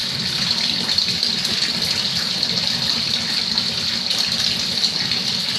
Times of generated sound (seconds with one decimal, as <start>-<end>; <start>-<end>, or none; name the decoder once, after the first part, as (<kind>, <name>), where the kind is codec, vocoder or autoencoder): none